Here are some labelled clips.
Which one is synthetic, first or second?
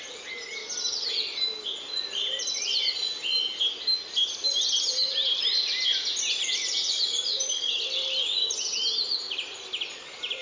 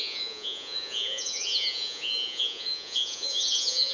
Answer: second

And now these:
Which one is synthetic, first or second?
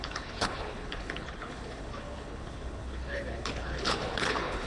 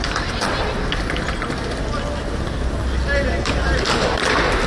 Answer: first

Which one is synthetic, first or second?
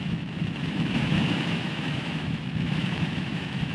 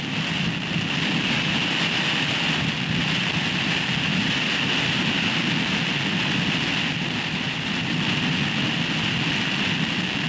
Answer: first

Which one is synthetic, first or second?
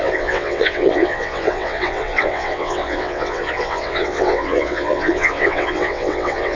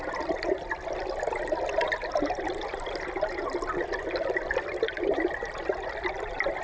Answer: first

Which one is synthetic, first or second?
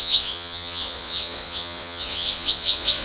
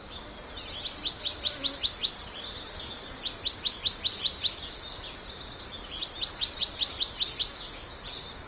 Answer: first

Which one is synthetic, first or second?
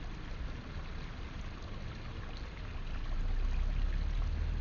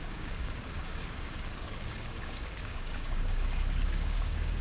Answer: second